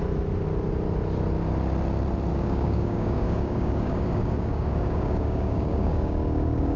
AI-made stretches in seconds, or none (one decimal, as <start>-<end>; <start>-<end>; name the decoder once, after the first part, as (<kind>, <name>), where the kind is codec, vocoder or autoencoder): 2.3-6.8 (codec, DAC)